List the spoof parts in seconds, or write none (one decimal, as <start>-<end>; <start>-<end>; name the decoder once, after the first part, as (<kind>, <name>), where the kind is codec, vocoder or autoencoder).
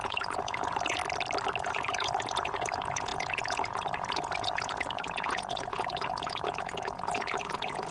0.0-1.0 (vocoder, Vocos); 1.6-7.9